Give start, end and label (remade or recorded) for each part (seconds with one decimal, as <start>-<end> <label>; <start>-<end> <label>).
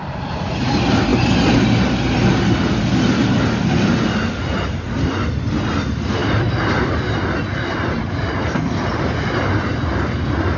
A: 0.0-10.6 recorded